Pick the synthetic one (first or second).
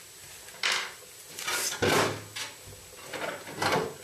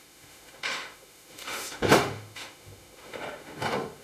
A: second